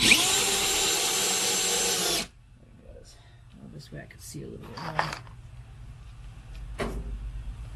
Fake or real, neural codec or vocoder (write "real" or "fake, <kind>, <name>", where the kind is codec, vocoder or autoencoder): real